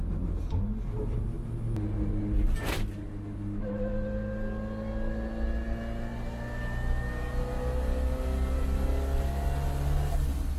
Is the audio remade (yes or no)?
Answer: no